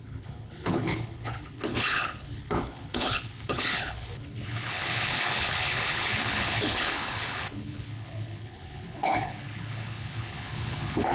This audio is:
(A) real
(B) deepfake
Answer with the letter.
B